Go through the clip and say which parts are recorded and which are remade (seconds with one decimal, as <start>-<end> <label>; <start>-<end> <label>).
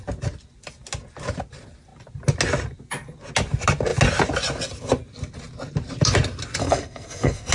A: 0.0-6.6 recorded; 6.6-7.5 remade